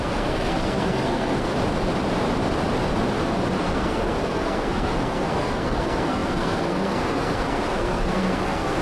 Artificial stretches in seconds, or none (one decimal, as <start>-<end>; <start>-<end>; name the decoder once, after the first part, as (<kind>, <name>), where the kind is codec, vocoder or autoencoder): 0.0-1.5 (codec, SNAC); 3.6-8.8